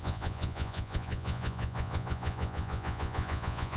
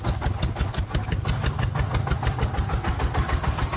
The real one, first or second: second